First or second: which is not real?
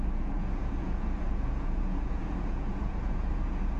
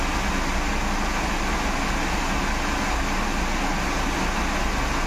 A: first